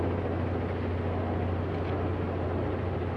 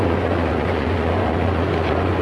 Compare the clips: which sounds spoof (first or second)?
second